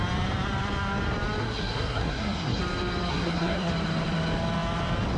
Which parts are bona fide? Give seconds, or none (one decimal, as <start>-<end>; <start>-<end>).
0.0-1.4; 2.6-3.1; 3.7-5.2